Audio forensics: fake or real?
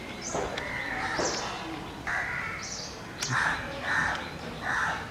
real